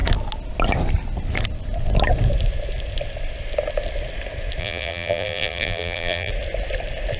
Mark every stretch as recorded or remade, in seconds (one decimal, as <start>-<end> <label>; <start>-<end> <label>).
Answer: 0.0-4.6 recorded; 4.6-6.3 remade; 6.3-7.2 recorded